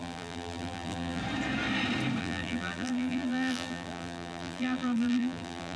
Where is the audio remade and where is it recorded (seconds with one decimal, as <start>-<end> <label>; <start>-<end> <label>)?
0.0-1.2 remade; 1.2-2.2 recorded; 2.2-5.8 remade